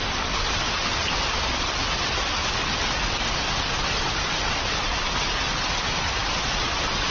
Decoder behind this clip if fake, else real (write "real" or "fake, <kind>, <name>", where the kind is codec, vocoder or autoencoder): real